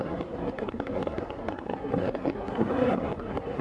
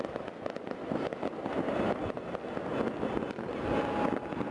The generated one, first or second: first